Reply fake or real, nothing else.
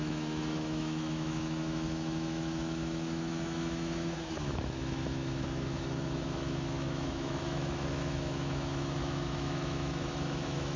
fake